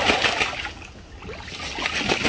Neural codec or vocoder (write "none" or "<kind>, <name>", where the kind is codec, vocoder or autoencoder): none